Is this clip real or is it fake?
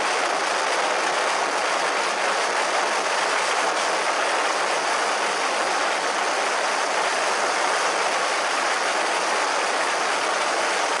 real